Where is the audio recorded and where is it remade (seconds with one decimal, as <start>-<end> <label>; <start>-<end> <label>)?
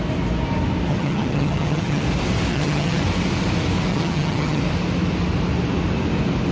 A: 0.0-0.9 recorded; 0.9-2.0 remade; 2.0-2.5 recorded; 2.5-3.0 remade; 3.0-3.9 recorded; 3.9-4.6 remade; 4.6-6.5 recorded